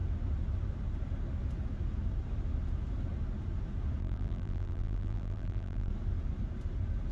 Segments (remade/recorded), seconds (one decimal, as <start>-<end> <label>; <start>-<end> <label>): 0.0-4.0 recorded; 4.0-5.9 remade; 5.9-7.1 recorded